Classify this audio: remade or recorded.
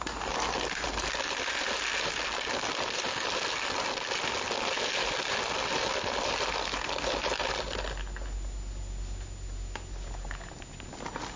recorded